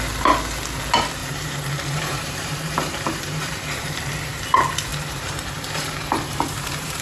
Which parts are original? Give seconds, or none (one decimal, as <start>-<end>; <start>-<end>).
0.0-1.2; 4.0-4.9